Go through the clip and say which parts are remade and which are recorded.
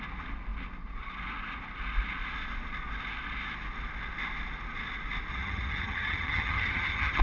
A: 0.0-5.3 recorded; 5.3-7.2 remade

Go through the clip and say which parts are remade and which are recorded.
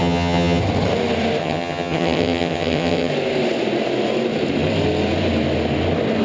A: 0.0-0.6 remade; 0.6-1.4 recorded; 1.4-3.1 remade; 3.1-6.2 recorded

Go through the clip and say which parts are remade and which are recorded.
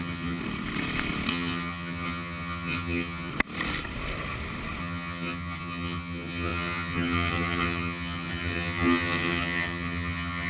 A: 0.0-0.4 remade; 0.4-1.3 recorded; 1.3-3.3 remade; 3.3-4.8 recorded; 4.8-10.5 remade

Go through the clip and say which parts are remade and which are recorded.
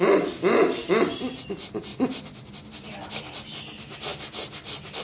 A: 0.0-5.0 recorded